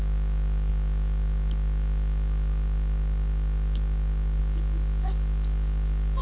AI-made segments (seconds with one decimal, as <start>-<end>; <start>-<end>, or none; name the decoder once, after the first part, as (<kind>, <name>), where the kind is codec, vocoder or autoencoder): none